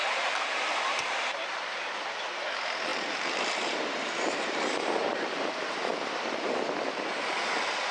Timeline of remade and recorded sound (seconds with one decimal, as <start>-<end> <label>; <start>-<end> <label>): 0.0-1.2 remade; 1.2-2.9 recorded; 2.9-5.5 remade; 5.5-7.9 recorded